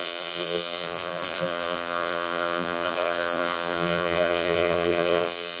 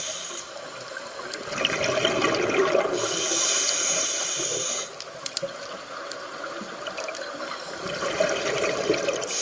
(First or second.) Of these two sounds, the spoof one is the first